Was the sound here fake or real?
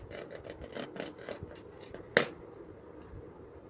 real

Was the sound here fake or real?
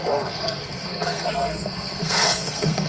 fake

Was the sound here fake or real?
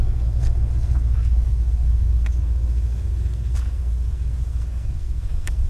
fake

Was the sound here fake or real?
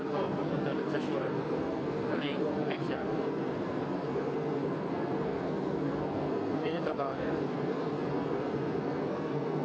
fake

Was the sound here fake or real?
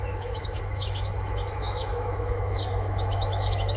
fake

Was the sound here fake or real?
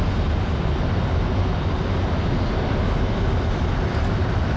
real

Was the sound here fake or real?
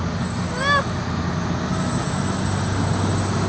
real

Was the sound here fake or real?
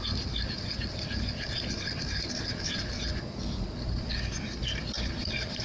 real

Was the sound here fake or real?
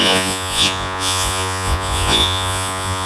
fake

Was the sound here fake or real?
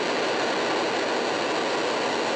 real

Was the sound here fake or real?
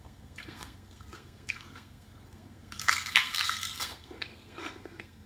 fake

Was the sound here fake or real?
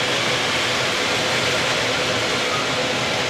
real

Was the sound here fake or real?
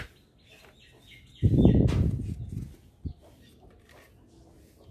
real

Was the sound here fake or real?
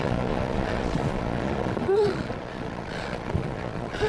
fake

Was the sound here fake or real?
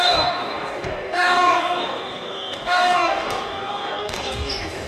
fake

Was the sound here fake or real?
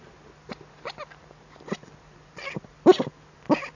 real